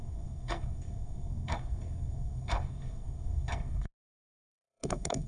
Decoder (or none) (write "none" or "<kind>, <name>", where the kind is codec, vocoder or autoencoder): codec, SNAC